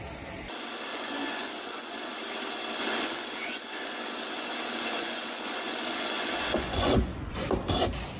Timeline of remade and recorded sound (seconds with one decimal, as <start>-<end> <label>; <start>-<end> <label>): 0.0-0.9 recorded; 0.9-2.1 remade; 2.1-2.8 recorded; 2.8-7.5 remade; 7.5-8.2 recorded